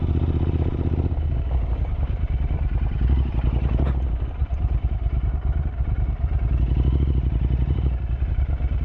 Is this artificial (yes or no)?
yes